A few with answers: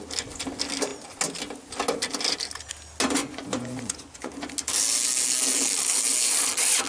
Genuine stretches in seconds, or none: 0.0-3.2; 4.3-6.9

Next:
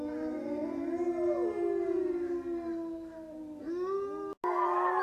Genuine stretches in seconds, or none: 0.0-5.0

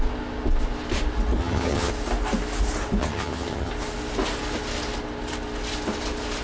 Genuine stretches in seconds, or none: 0.0-1.4; 1.9-3.0; 3.7-6.4